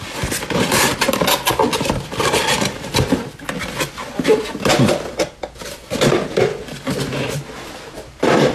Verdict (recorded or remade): remade